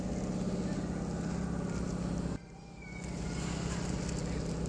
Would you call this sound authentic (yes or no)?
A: yes